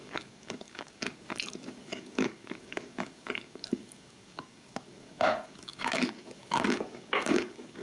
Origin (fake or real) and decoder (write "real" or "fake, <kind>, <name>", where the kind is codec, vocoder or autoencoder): fake, codec, DAC